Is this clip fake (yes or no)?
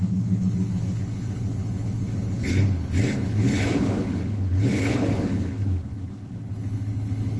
yes